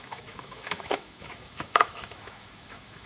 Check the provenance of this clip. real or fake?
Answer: fake